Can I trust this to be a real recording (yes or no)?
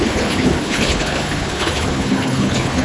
no